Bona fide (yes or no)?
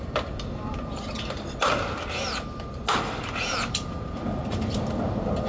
yes